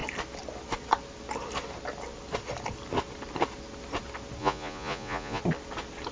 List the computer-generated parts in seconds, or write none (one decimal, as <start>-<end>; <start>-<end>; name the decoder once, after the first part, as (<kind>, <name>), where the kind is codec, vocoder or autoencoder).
4.4-5.4 (vocoder, Vocos)

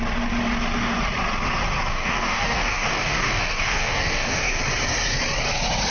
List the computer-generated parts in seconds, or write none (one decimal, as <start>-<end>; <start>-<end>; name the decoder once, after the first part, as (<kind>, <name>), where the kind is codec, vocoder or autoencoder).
1.9-4.6 (codec, DAC)

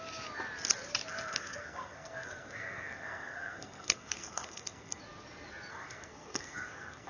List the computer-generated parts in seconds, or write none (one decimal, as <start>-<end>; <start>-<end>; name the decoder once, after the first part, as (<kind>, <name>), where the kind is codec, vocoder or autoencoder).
1.1-5.0 (codec, SNAC); 5.7-7.1

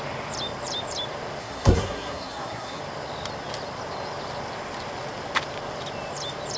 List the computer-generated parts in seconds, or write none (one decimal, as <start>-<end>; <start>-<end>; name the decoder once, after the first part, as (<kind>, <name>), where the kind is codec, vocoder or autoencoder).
1.4-2.8 (codec, SNAC)